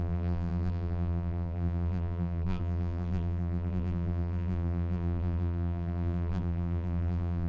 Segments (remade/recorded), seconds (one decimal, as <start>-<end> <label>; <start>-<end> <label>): 0.0-7.5 remade